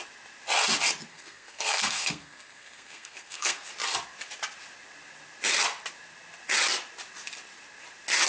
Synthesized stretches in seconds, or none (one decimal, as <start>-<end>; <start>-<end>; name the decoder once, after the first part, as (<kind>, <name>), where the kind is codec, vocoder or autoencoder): 1.1-3.7 (codec, SNAC)